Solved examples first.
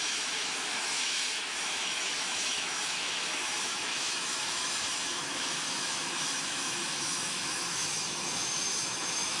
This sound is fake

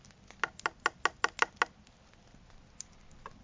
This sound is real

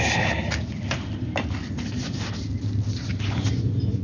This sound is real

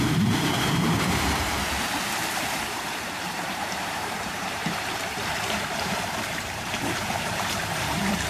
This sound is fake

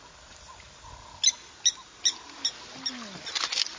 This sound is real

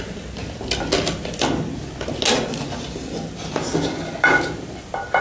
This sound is real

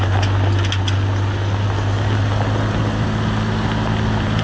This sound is real